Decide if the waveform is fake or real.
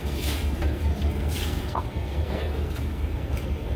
fake